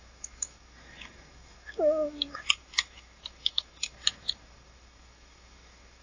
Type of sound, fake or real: fake